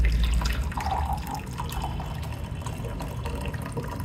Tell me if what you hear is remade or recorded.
recorded